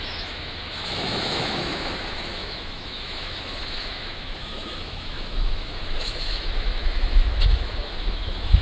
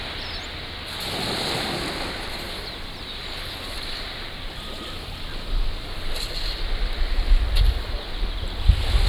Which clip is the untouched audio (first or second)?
second